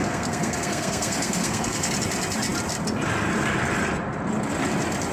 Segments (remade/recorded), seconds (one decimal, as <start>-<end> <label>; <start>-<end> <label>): 0.0-1.9 remade; 1.9-5.1 recorded